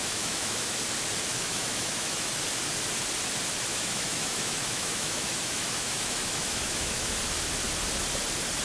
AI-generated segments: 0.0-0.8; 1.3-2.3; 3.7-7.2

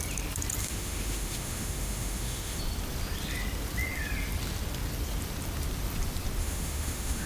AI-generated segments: 0.6-2.6; 6.4-7.3

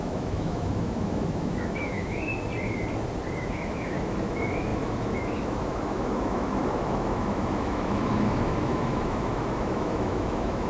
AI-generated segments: 0.0-2.3; 3.4-10.7

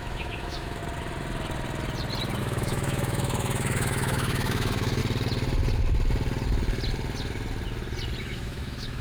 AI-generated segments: 0.0-0.8; 2.4-5.0; 8.2-9.0